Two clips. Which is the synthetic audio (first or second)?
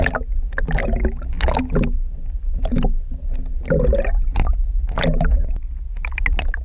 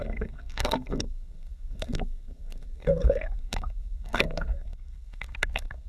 second